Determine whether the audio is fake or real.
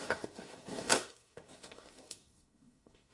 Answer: fake